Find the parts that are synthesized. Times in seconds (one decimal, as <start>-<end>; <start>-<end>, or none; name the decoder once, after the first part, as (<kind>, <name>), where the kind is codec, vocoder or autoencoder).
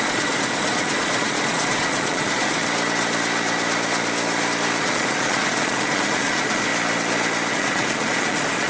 0.0-2.6 (vocoder, Vocos); 4.8-6.7; 7.5-8.7